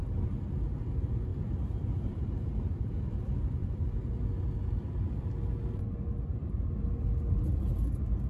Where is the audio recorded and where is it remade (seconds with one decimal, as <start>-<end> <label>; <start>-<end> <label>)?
0.0-1.3 recorded; 1.3-2.9 remade; 2.9-3.6 recorded; 3.6-4.2 remade; 4.2-8.3 recorded